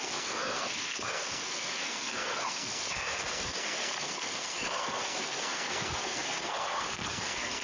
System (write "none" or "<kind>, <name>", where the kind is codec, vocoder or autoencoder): codec, SNAC